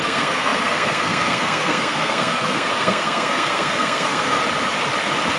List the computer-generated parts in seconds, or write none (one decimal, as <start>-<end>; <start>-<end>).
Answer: 0.0-4.4